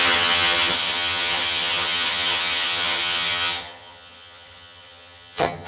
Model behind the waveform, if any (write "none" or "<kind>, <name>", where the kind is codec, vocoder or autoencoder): vocoder, HiFi-GAN